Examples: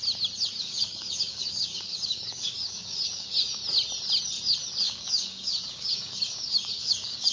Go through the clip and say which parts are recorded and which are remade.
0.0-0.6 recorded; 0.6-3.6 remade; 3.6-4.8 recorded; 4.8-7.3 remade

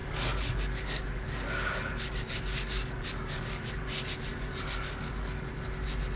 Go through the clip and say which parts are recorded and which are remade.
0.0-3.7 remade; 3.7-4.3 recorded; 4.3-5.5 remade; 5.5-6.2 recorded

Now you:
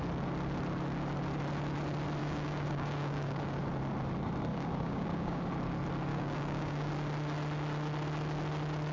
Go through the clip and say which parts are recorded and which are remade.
0.0-2.2 recorded; 2.2-3.6 remade; 3.6-4.5 recorded; 4.5-5.4 remade; 5.4-6.1 recorded; 6.1-6.9 remade; 6.9-8.9 recorded

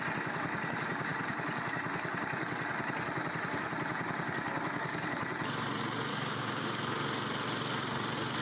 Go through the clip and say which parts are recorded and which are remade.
0.0-6.1 recorded; 6.1-6.8 remade; 6.8-8.4 recorded